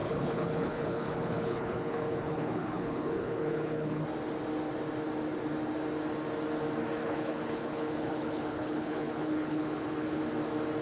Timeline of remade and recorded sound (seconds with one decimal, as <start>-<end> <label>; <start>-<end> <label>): 0.0-4.0 remade; 4.0-7.0 recorded; 7.0-10.2 remade; 10.2-10.8 recorded